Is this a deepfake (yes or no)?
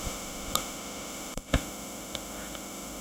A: yes